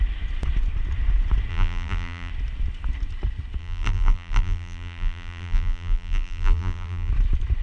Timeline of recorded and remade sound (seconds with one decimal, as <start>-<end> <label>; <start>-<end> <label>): 0.0-1.5 recorded; 1.5-2.3 remade; 2.3-3.6 recorded; 3.6-7.1 remade; 7.1-7.6 recorded